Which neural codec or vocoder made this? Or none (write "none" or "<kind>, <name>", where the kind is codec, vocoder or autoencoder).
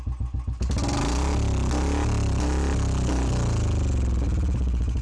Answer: none